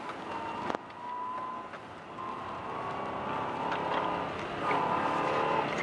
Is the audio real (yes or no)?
yes